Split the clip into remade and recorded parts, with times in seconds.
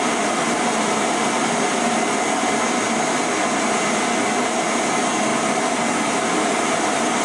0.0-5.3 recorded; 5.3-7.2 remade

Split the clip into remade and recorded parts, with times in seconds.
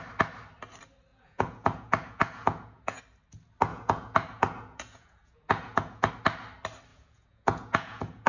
0.0-1.1 recorded; 1.1-3.0 remade; 3.0-3.7 recorded; 3.7-6.1 remade; 6.1-6.9 recorded; 6.9-8.3 remade